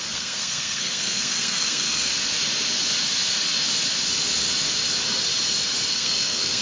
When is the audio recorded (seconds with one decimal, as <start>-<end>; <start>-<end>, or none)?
2.1-5.9

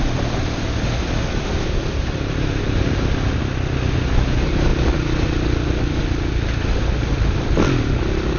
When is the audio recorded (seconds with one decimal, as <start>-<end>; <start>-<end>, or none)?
0.0-8.4

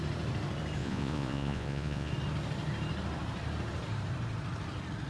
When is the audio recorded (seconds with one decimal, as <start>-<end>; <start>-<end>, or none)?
0.0-0.8; 2.1-5.1

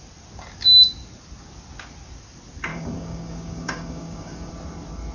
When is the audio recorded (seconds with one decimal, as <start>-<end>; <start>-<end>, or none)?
0.0-2.7; 4.5-5.1

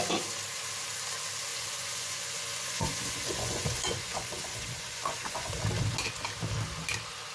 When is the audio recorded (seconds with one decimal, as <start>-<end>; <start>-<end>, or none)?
0.0-1.5; 5.5-7.3